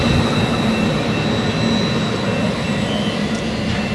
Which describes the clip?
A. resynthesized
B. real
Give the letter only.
B